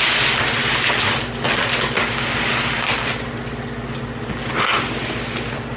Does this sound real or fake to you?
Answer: real